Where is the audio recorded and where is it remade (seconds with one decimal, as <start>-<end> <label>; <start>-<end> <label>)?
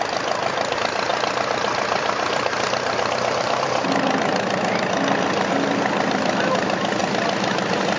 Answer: 0.0-1.1 recorded; 1.1-4.9 remade; 4.9-7.0 recorded; 7.0-8.0 remade